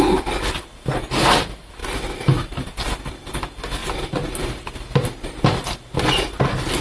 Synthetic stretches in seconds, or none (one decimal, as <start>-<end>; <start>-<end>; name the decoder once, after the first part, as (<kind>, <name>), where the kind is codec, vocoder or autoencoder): none